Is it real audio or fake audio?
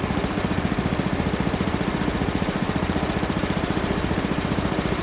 fake